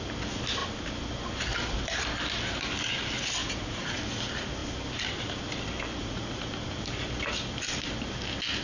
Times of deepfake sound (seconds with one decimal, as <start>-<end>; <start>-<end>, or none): 3.4-4.0; 6.0-6.5